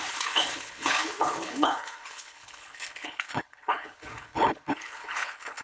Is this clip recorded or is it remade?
remade